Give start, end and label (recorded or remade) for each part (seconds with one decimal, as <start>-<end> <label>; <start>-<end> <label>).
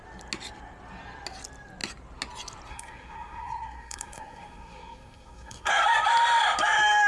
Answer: 0.0-2.7 recorded; 2.7-5.7 remade; 5.7-7.1 recorded